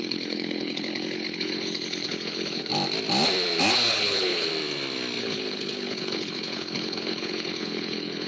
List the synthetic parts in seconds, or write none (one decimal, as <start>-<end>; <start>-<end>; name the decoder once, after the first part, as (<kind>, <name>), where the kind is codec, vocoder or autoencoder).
0.0-2.7 (codec, HILCodec); 3.9-4.5; 5.2-8.3